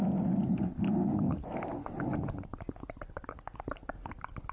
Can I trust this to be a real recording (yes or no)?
yes